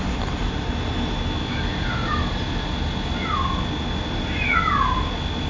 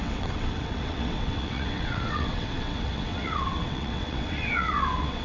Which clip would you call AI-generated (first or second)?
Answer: second